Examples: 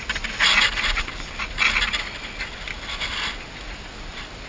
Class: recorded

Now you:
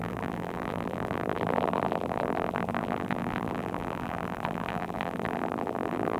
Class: remade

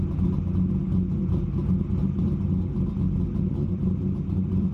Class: recorded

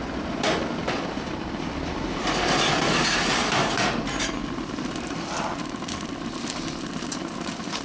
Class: remade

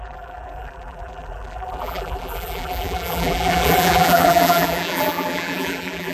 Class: remade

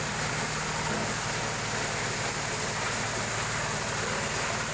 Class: recorded